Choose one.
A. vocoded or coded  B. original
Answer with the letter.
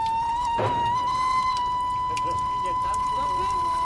B